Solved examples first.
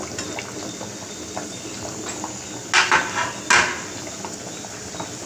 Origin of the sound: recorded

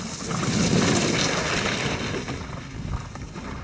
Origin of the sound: recorded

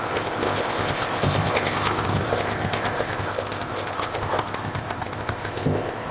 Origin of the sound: remade